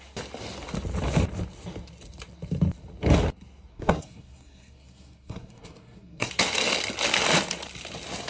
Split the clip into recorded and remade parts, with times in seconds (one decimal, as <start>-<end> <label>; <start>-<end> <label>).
0.0-3.7 recorded; 3.7-6.3 remade; 6.3-8.3 recorded